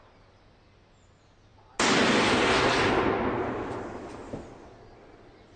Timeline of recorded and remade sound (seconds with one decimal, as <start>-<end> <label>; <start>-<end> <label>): 0.0-5.6 recorded